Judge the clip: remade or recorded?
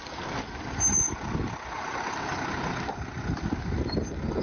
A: recorded